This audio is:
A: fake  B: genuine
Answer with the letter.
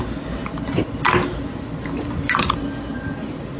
B